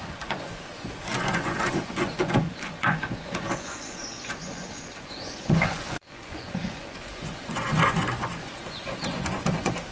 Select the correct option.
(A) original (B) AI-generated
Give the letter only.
B